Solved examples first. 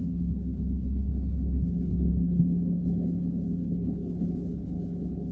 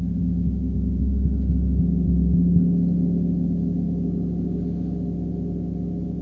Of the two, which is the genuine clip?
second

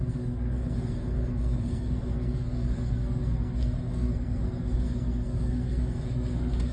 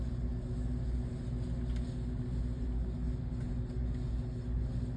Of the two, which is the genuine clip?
second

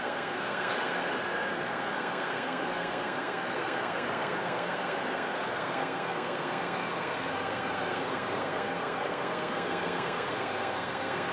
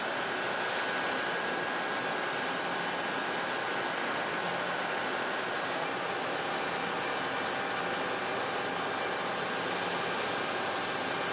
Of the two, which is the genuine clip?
second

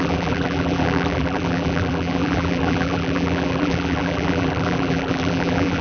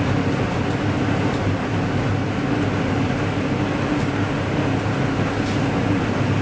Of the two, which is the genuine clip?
second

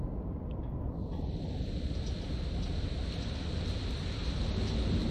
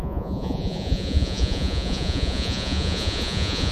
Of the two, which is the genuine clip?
first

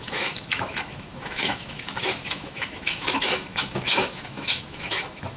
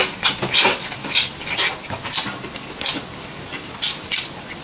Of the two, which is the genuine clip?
second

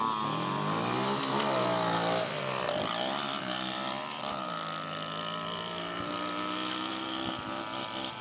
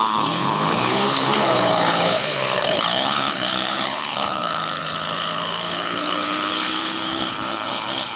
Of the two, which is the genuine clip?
first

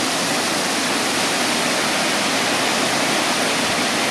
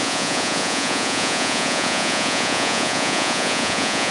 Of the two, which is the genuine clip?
first